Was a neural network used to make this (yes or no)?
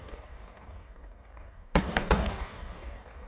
yes